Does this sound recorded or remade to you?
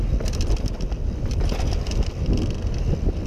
recorded